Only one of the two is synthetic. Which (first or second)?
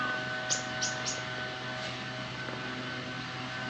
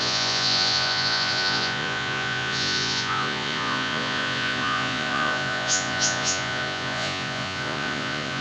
second